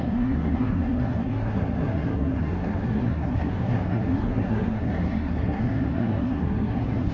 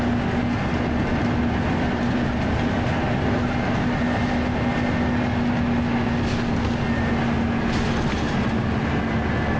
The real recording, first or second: second